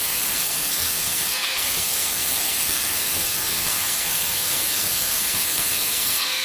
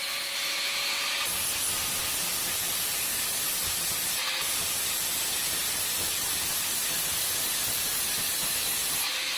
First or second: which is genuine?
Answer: second